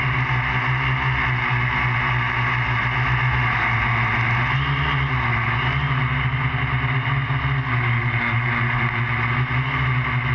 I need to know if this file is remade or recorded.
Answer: recorded